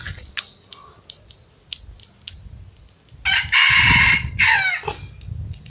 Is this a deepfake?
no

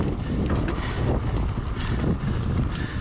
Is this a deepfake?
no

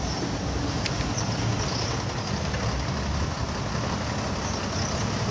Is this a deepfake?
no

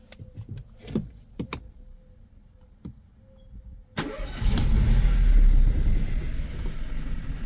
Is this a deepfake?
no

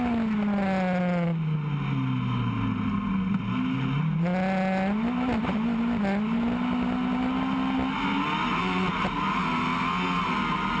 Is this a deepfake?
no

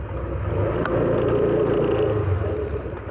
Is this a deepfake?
no